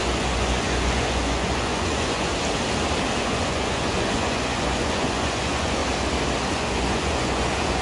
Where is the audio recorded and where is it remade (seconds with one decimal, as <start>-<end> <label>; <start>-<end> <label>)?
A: 0.0-2.3 remade; 2.3-3.2 recorded; 3.2-5.8 remade; 5.8-6.5 recorded; 6.5-7.8 remade